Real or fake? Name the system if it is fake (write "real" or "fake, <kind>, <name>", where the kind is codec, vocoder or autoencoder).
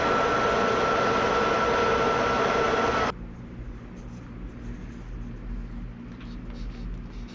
real